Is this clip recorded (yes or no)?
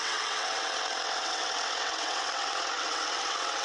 no